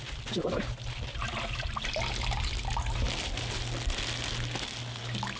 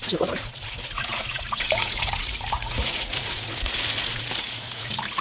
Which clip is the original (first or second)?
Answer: first